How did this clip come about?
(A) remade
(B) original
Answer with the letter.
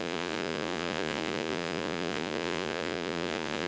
A